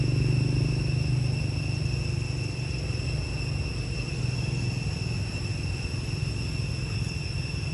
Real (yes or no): yes